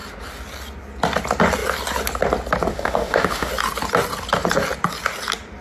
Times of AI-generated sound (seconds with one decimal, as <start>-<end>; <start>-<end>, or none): 2.7-3.5